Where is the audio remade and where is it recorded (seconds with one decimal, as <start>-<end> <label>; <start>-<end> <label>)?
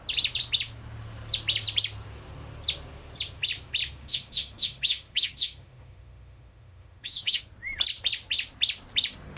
0.0-4.0 recorded; 4.0-7.4 remade; 7.4-9.4 recorded